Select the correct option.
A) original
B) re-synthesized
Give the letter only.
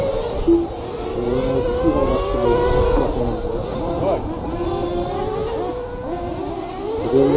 A